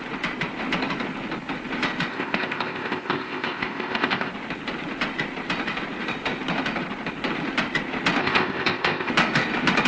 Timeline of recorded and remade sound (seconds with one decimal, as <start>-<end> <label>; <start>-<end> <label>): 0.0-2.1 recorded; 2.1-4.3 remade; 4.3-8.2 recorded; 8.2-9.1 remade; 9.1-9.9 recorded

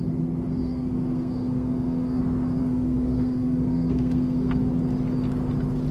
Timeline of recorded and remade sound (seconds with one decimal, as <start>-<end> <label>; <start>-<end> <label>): 0.0-0.6 recorded; 0.6-2.2 remade; 2.2-2.6 recorded; 2.6-4.7 remade; 4.7-5.9 recorded

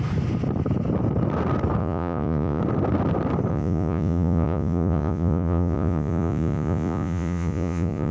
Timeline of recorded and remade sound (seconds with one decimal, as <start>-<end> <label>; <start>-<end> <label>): 0.0-1.8 recorded; 1.8-2.6 remade; 2.6-3.5 recorded; 3.5-8.1 remade

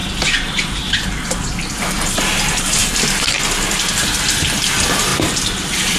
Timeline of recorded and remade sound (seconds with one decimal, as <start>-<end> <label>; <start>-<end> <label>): 0.0-6.0 recorded

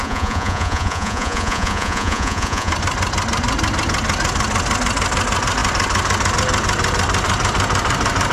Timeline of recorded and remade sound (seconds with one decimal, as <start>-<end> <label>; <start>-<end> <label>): 0.0-2.7 remade; 2.7-8.3 recorded

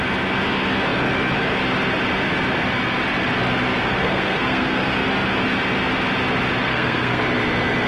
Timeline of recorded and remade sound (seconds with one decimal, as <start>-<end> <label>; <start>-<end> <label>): 0.0-4.0 recorded; 4.0-5.0 remade; 5.0-6.6 recorded; 6.6-7.2 remade; 7.2-7.9 recorded

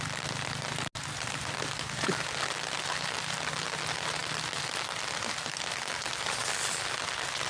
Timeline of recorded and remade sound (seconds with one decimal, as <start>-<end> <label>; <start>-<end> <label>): 0.0-7.5 recorded